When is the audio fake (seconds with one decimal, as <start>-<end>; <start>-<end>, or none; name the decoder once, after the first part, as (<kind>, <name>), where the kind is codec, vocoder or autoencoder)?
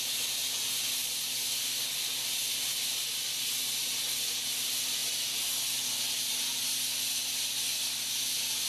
none